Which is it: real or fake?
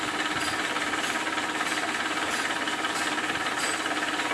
real